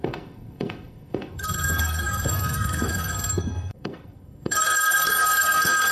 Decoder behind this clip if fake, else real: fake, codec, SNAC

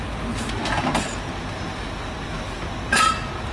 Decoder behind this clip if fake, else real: real